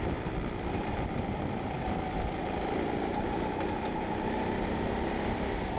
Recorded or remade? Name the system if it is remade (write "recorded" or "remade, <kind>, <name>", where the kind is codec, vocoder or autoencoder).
recorded